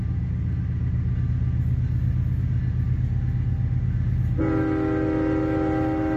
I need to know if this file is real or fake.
real